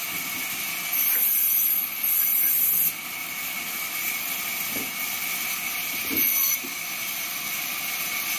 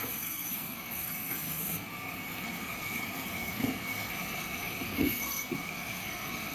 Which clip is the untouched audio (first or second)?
first